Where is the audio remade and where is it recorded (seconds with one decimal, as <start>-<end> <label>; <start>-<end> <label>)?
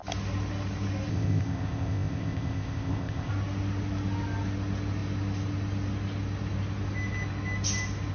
0.0-1.1 recorded; 1.1-3.3 remade; 3.3-8.1 recorded